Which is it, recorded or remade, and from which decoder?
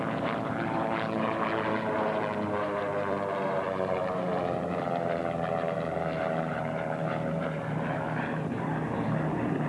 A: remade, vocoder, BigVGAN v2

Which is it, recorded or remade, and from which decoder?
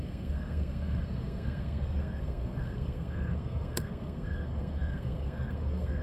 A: remade, codec, SNAC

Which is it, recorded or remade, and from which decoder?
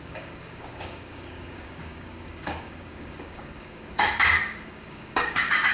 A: remade, codec, DAC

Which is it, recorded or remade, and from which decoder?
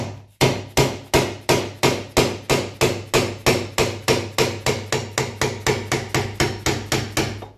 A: recorded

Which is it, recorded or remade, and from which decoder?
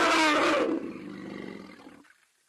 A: recorded